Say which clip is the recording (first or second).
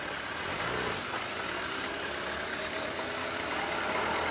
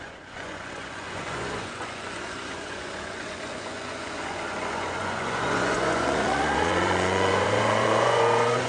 first